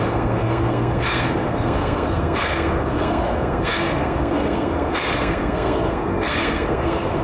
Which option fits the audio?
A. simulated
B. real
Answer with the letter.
A